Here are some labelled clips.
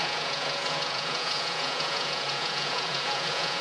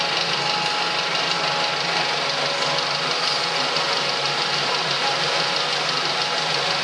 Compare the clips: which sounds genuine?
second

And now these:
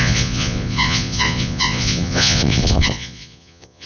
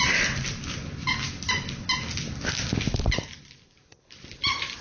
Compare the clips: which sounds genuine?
second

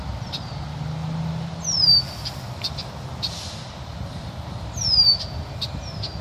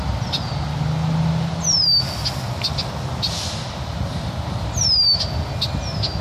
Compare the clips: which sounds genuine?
second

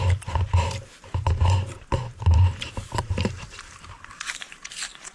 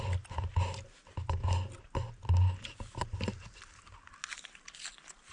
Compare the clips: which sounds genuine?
second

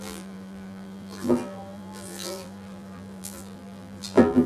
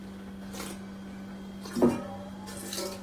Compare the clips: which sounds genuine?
second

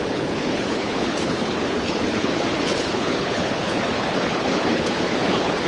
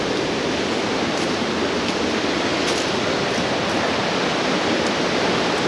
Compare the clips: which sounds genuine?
second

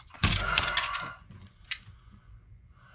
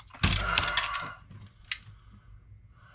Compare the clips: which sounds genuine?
second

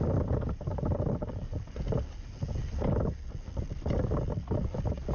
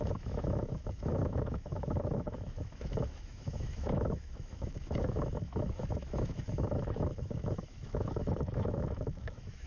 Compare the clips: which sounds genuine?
first